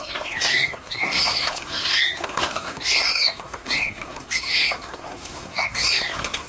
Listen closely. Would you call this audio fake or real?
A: fake